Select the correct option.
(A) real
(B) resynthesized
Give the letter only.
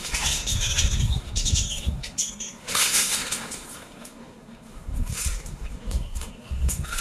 B